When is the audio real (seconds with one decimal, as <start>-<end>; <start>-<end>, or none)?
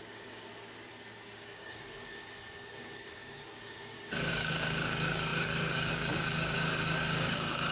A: 0.5-1.3